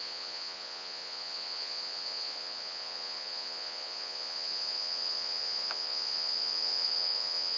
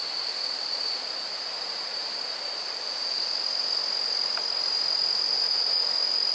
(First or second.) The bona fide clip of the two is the second